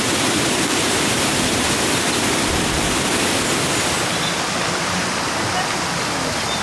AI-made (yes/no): no